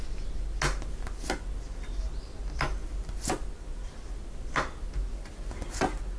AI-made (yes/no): no